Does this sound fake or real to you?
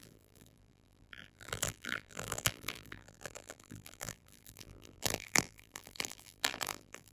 fake